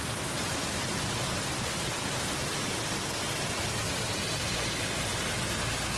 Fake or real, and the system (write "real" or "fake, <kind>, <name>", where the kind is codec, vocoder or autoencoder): real